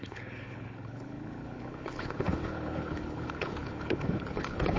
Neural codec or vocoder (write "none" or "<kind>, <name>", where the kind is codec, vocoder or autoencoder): codec, HILCodec